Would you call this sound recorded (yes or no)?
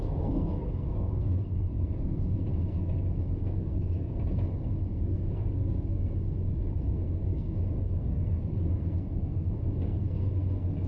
no